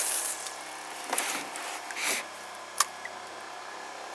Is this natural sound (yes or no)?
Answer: yes